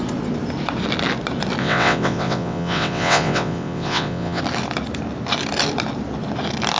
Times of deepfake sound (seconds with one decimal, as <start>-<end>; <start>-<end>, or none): 1.6-4.4